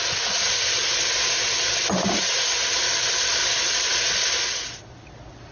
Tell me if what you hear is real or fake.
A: real